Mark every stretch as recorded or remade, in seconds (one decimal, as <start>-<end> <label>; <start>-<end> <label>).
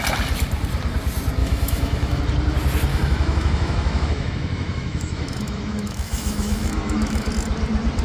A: 0.0-1.4 recorded; 1.4-2.2 remade; 2.2-2.9 recorded; 2.9-7.3 remade; 7.3-8.0 recorded